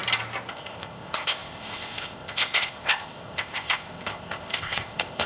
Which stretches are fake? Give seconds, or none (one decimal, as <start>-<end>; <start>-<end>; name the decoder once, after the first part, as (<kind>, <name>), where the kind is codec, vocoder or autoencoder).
0.5-5.3 (codec, ZipCodec)